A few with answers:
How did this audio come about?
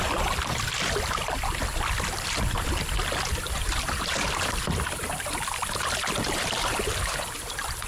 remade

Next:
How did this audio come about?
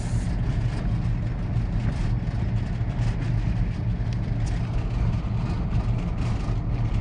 recorded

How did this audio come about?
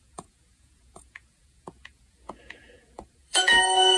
remade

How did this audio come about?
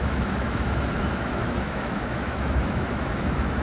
remade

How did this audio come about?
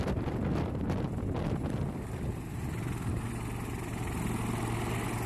recorded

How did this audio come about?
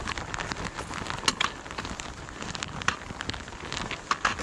recorded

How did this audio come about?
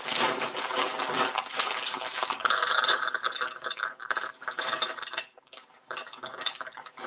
remade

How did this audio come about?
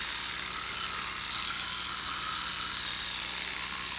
recorded